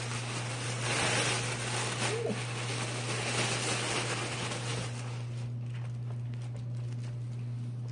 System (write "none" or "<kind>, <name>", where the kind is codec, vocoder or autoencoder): none